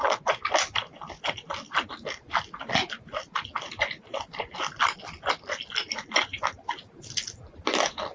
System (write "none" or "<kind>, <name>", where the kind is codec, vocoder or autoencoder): none